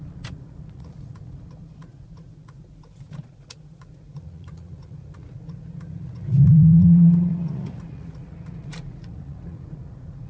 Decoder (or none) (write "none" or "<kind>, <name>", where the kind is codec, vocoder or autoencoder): vocoder, Vocos